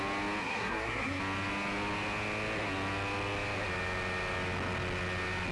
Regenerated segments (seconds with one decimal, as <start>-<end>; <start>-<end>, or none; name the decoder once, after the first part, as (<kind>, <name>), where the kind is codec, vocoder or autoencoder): 0.4-1.2 (codec, SNAC)